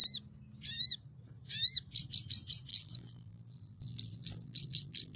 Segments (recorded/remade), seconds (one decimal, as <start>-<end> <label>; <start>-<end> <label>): 0.0-2.7 recorded; 2.7-5.2 remade